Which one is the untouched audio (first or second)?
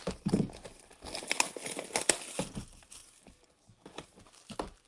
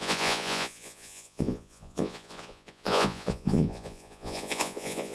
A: first